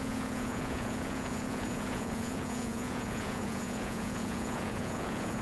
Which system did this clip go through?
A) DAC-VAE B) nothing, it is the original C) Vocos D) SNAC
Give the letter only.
C